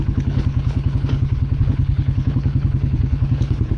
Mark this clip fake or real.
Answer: fake